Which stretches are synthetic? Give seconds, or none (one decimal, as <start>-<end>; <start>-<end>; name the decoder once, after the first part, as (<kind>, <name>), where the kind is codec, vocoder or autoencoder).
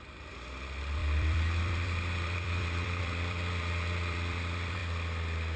0.0-4.8 (vocoder, BigVGAN v2)